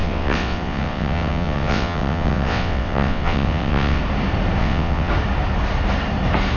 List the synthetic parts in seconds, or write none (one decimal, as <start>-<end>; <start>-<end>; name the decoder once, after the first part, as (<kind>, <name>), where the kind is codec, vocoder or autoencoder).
0.0-4.0 (vocoder, WaveNeXt); 4.6-5.1